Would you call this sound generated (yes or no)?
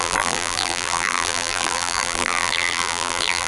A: yes